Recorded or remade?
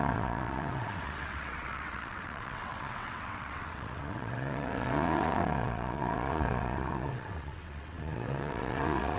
remade